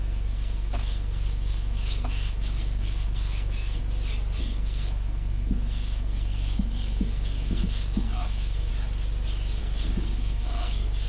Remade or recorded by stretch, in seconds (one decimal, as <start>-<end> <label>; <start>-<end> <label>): 0.0-3.8 remade; 3.8-4.4 recorded; 4.4-8.7 remade; 8.7-9.6 recorded; 9.6-11.1 remade

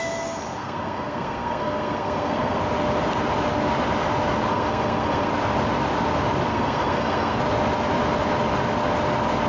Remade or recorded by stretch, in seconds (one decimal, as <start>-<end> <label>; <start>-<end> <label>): 0.0-0.6 recorded; 0.6-2.6 remade; 2.6-4.5 recorded; 4.5-5.3 remade; 5.3-6.5 recorded; 6.5-7.4 remade; 7.4-9.5 recorded

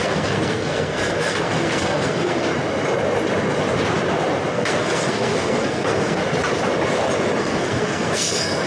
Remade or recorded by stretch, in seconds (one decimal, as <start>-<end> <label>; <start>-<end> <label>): 0.0-2.5 remade; 2.5-4.5 recorded; 4.5-6.2 remade; 6.2-7.4 recorded; 7.4-8.7 remade

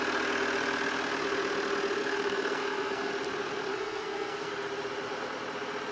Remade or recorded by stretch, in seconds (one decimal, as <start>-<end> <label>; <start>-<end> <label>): 0.0-2.0 recorded; 2.0-3.1 remade; 3.1-3.7 recorded; 3.7-4.5 remade; 4.5-5.9 recorded

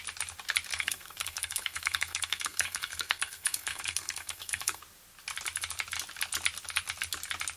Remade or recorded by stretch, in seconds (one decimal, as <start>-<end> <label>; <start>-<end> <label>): 0.0-0.7 recorded; 0.7-4.8 remade; 4.8-7.6 recorded